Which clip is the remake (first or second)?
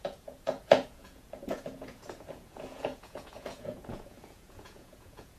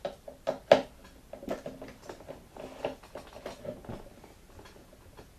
first